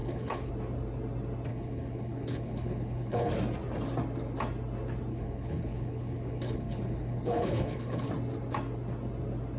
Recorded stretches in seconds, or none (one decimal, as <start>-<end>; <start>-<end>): 0.5-1.5; 3.3-5.1; 8.1-9.6